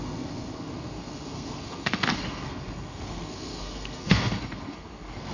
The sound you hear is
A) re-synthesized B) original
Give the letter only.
A